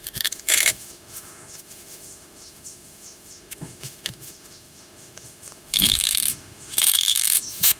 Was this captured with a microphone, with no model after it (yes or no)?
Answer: no